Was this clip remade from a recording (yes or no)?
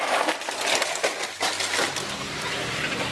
no